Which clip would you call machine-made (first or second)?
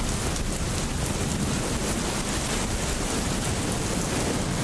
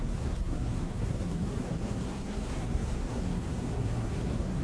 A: second